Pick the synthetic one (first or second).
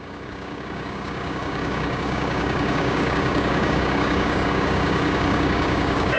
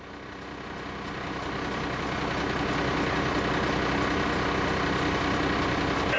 first